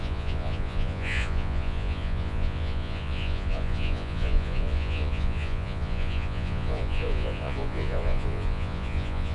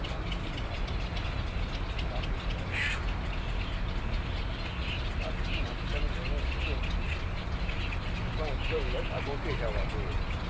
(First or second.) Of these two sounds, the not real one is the first